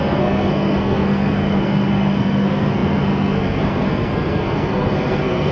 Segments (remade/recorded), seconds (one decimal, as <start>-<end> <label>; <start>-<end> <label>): 0.0-5.5 remade